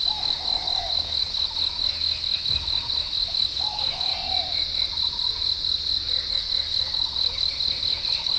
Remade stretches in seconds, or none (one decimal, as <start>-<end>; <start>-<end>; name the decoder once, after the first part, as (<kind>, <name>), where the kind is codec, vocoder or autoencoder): 0.0-4.1 (codec, DAC); 6.3-8.4